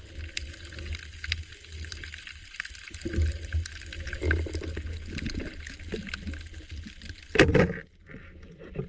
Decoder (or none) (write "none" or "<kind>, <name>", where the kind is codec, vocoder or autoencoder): none